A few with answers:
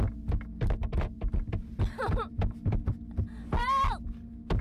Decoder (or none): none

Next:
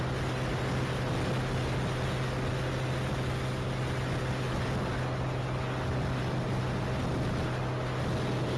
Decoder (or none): none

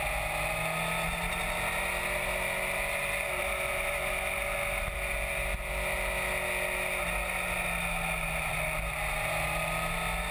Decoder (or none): none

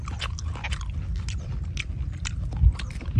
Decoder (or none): none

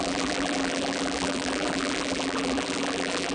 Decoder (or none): vocoder, BigVGAN v2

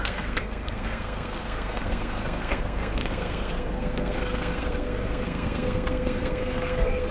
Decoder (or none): codec, SNAC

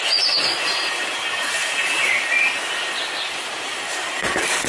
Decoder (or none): none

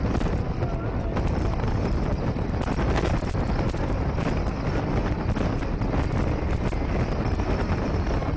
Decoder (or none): none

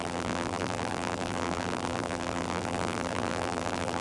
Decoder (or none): vocoder, BigVGAN v2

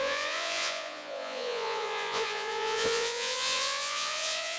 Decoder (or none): vocoder, Vocos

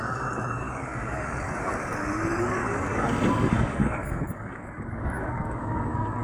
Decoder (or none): codec, DAC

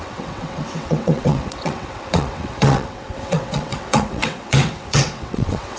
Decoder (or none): vocoder, WaveNeXt